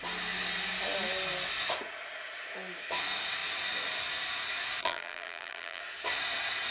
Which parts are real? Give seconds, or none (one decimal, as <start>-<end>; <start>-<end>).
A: 0.0-4.8; 5.8-6.7